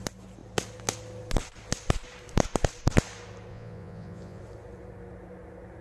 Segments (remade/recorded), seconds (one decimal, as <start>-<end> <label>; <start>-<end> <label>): 0.0-3.5 recorded; 3.5-4.4 remade; 4.4-5.8 recorded